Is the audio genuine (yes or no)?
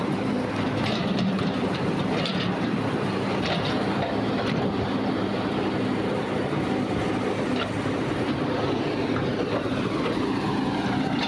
no